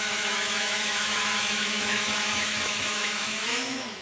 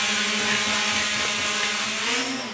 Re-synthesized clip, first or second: first